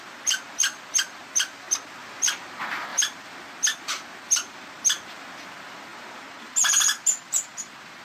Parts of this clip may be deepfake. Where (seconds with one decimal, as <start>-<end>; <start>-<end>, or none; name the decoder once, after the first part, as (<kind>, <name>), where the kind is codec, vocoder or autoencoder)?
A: none